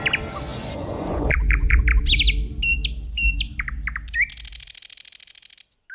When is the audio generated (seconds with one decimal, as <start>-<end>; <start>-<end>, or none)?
0.5-1.8